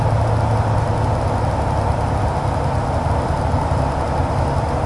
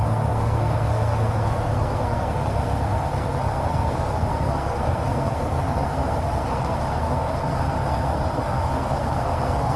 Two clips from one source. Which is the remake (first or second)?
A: second